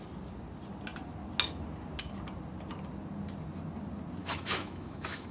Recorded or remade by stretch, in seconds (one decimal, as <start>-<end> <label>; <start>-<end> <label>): 0.0-4.2 recorded; 4.2-5.3 remade